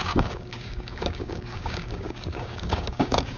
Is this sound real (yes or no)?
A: no